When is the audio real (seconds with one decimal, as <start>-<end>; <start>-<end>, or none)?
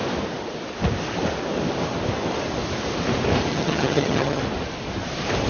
0.0-3.5; 4.4-5.5